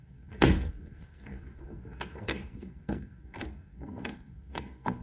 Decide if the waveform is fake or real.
fake